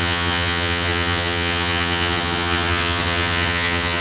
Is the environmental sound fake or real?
fake